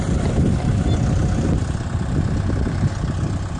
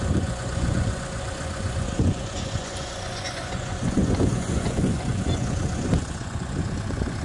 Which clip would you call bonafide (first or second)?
first